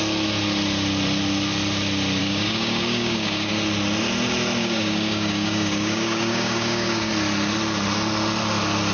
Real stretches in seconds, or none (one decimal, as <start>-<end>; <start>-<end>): 0.0-2.2; 3.5-4.6; 7.1-8.9